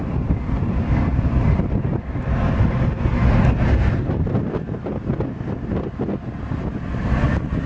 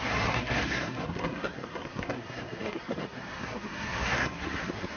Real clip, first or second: first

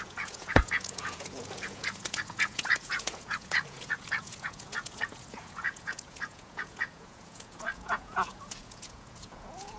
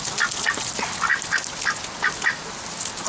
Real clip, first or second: second